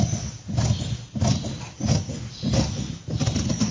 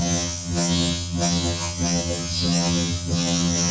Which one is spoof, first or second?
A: second